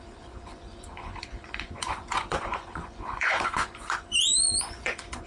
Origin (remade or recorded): remade